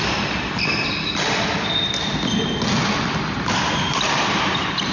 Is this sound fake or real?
real